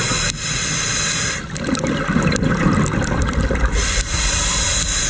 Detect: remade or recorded recorded